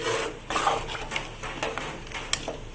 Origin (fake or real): real